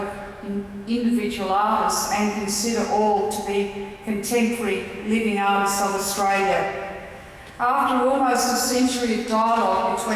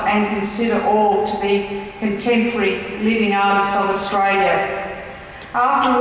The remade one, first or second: first